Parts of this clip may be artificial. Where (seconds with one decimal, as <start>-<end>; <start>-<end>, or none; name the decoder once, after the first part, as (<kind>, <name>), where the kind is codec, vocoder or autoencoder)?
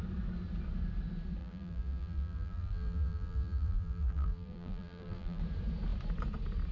1.4-5.4 (vocoder, BigVGAN v2)